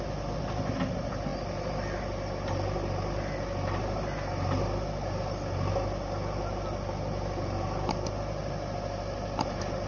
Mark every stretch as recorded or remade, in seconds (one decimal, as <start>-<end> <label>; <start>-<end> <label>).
0.0-9.9 recorded